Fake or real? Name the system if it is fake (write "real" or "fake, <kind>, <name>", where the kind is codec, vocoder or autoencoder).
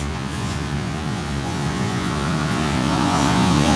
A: fake, vocoder, Vocos